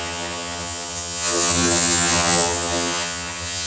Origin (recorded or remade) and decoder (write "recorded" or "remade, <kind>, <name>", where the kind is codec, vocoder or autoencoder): remade, vocoder, HiFi-GAN